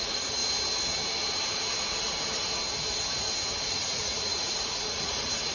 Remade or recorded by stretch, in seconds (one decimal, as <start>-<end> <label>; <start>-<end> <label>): 0.0-0.4 remade; 0.4-3.7 recorded; 3.7-5.5 remade